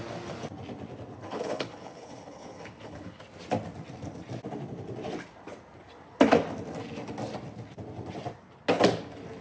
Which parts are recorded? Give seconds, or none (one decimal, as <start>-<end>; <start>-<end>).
0.0-1.2; 3.2-9.4